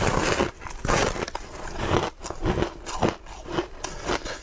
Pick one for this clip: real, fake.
real